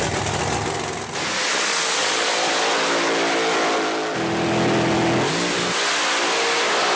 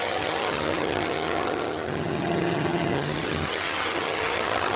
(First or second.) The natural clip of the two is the first